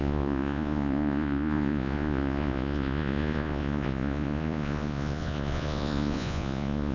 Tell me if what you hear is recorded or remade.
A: remade